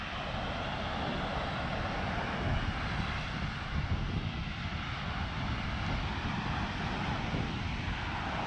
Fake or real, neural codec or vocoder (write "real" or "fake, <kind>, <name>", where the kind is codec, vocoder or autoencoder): real